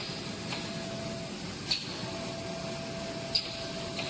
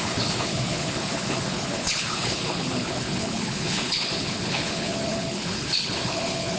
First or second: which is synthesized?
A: second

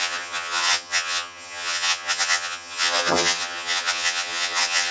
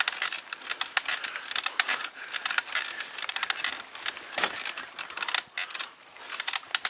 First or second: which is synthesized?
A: first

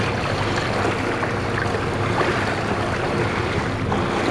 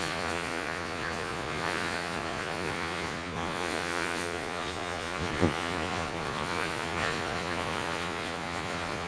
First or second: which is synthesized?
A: second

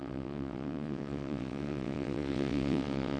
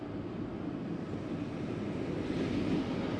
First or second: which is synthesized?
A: first